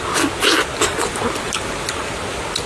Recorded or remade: recorded